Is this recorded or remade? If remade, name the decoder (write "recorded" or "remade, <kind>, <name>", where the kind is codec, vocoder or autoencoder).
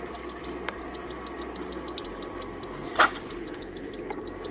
recorded